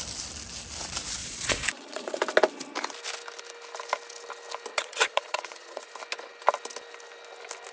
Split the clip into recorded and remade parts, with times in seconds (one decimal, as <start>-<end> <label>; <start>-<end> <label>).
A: 0.0-1.2 recorded; 1.2-2.2 remade; 2.2-4.7 recorded; 4.7-5.9 remade; 5.9-7.7 recorded

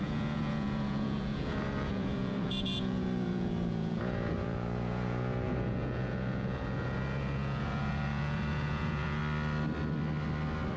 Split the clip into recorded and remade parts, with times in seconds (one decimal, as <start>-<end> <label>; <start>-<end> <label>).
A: 0.0-9.2 remade; 9.2-10.8 recorded

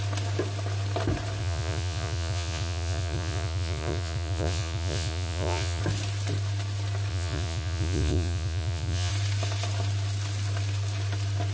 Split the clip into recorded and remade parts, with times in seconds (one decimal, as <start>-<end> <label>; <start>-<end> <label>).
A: 0.0-1.4 recorded; 1.4-5.8 remade; 5.8-7.1 recorded; 7.1-9.1 remade; 9.1-11.5 recorded